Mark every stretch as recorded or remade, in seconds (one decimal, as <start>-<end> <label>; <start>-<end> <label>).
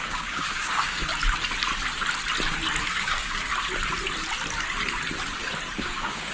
0.0-1.1 remade; 1.1-2.9 recorded; 2.9-3.5 remade; 3.5-5.8 recorded; 5.8-6.3 remade